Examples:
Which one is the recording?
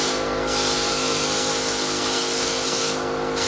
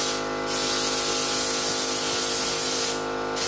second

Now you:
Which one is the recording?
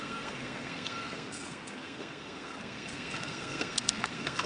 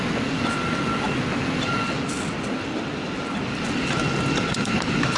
second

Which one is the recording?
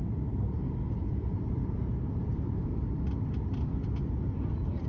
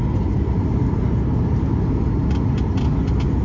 second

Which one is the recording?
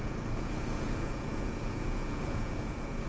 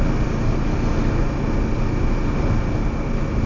second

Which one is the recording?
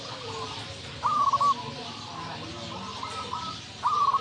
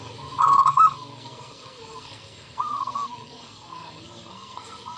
first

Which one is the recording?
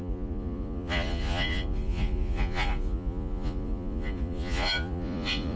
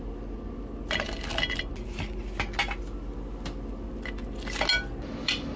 second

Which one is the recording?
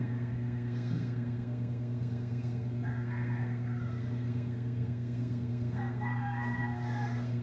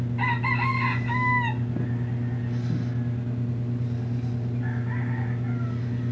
second